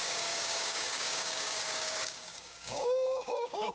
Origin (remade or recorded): remade